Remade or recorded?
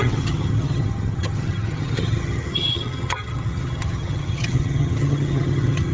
remade